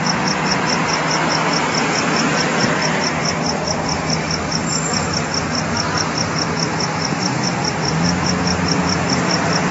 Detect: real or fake real